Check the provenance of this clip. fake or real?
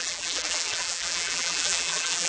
fake